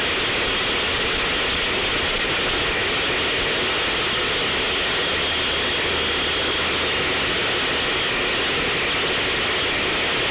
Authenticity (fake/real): real